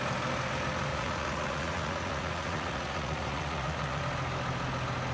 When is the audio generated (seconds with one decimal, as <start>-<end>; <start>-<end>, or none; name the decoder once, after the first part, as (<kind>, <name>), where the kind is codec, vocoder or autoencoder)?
0.9-4.0 (vocoder, Vocos)